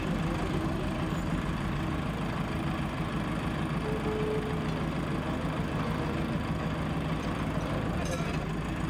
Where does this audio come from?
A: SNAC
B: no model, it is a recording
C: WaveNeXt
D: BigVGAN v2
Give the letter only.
B